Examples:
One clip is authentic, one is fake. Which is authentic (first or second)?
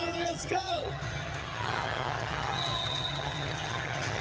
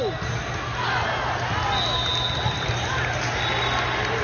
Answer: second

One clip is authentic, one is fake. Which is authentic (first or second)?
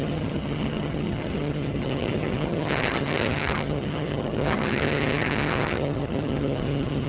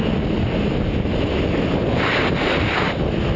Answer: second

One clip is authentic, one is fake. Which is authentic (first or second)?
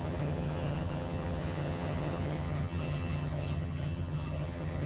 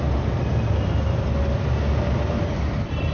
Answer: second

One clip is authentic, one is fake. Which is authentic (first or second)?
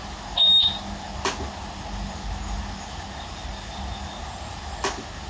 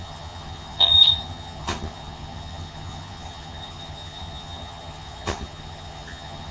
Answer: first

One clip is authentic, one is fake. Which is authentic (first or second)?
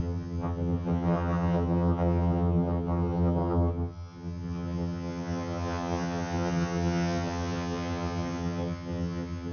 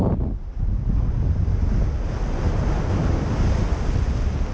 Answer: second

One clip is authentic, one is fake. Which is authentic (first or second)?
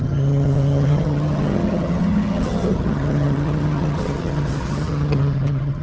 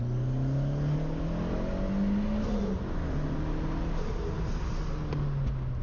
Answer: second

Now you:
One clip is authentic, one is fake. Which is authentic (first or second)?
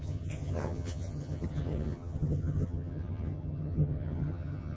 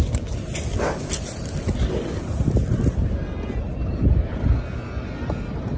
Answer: second